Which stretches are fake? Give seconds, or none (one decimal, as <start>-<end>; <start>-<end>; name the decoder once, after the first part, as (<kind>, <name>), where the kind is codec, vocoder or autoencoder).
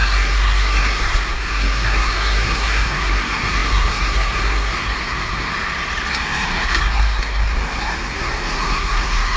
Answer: 0.0-5.5 (codec, SNAC); 6.1-9.4